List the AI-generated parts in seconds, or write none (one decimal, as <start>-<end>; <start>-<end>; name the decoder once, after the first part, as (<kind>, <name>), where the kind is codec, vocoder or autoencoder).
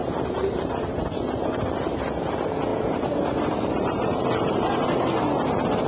0.0-2.0 (vocoder, BigVGAN v2); 2.7-5.1